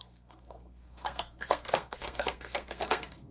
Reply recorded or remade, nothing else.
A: remade